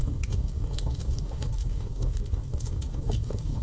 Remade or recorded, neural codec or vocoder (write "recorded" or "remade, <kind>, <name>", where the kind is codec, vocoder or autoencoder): remade, codec, DAC